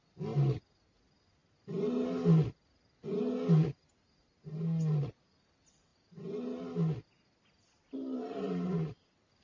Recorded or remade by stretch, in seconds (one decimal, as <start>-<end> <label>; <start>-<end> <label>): 0.0-9.4 recorded